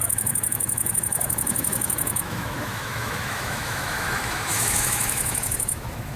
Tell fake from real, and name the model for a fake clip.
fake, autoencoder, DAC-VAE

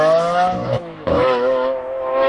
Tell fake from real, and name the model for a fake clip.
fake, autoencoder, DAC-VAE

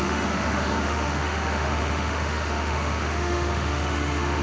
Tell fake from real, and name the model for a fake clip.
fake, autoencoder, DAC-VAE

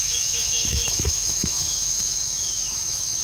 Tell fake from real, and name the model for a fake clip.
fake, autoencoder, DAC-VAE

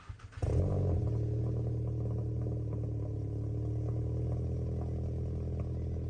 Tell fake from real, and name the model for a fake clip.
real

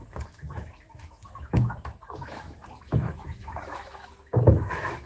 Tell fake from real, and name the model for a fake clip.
fake, autoencoder, DAC-VAE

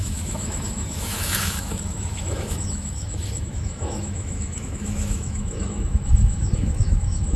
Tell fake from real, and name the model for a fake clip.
fake, autoencoder, DAC-VAE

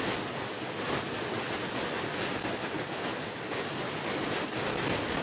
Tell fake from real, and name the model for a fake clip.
real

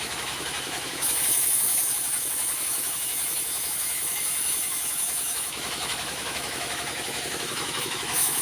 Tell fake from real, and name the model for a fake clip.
fake, autoencoder, DAC-VAE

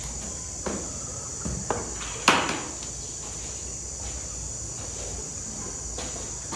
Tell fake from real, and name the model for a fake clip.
real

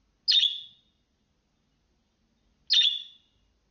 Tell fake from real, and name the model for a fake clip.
real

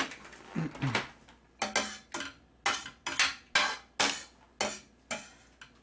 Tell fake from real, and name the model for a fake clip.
real